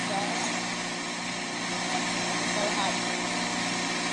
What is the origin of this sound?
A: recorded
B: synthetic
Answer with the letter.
A